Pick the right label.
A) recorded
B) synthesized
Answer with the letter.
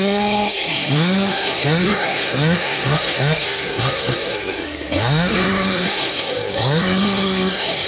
B